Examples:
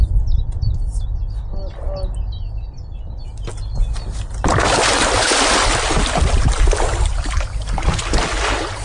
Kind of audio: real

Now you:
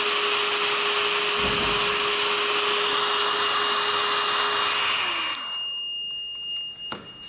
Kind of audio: real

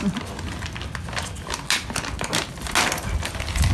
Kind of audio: real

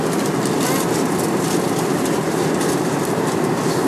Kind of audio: real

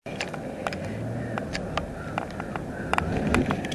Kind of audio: real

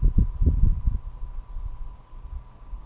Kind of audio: real